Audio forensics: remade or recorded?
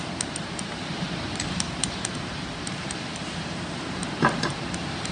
remade